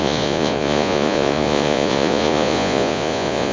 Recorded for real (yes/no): no